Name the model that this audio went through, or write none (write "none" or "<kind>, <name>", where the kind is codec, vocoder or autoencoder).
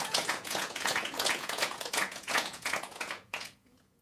vocoder, Vocos